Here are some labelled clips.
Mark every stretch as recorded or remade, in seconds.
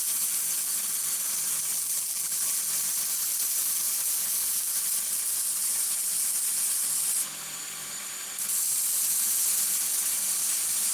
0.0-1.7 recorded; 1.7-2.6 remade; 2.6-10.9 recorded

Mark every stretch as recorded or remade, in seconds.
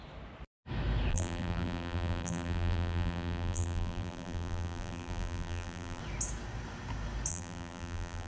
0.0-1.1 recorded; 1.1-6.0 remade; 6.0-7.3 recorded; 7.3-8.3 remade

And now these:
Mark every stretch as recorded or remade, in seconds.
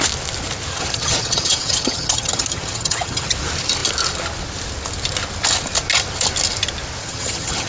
0.0-0.7 recorded; 0.7-3.3 remade; 3.3-7.0 recorded; 7.0-7.7 remade